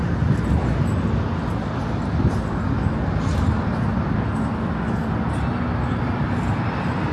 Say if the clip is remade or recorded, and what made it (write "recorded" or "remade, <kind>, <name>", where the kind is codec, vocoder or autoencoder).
recorded